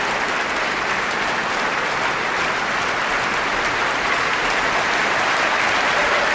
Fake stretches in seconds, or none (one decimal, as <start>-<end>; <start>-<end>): none